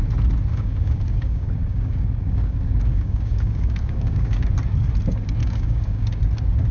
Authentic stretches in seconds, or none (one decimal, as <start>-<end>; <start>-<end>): 0.0-0.5; 4.5-5.4; 6.2-6.7